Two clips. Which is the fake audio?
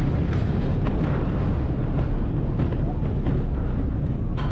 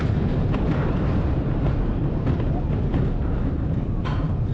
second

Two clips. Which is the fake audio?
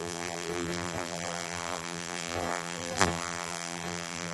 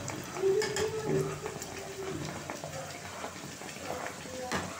first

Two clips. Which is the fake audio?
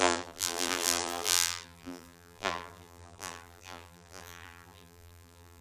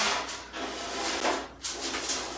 first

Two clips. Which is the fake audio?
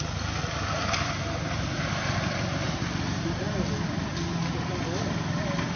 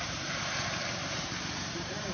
second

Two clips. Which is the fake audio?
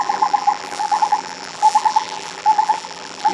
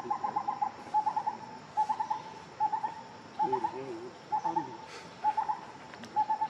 first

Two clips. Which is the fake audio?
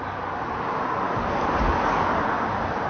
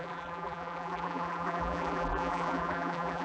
second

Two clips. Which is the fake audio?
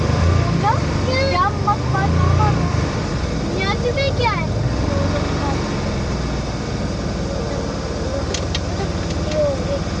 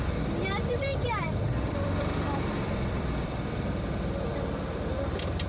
second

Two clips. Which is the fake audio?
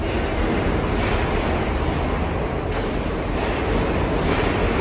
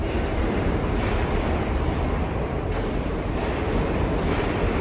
second